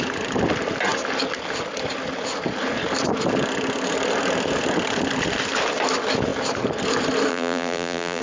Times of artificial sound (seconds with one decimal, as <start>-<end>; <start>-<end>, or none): 7.3-8.2